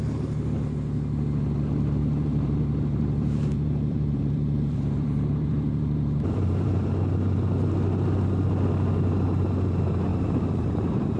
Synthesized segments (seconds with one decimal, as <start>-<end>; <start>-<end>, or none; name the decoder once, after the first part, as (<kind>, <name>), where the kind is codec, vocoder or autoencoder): 2.0-6.9 (vocoder, BigVGAN v2); 10.1-11.2